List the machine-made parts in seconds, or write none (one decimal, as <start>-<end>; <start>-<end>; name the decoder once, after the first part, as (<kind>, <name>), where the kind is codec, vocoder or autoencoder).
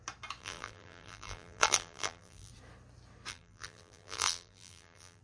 0.4-2.5 (vocoder, BigVGAN v2); 3.3-5.2